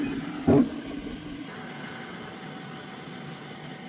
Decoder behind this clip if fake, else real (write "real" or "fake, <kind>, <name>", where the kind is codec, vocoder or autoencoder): real